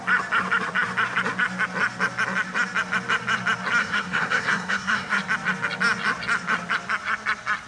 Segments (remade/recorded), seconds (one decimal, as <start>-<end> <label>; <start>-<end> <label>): 0.0-3.8 recorded; 3.8-5.2 remade; 5.2-7.7 recorded